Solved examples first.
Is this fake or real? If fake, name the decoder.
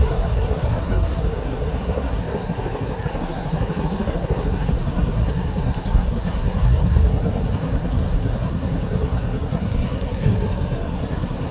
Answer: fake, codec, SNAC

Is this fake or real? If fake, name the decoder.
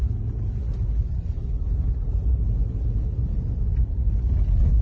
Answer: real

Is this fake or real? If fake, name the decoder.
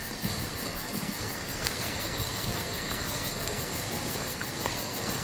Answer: fake, codec, SNAC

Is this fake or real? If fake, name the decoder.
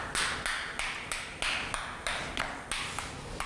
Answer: real